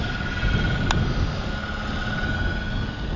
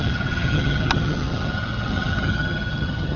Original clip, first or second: first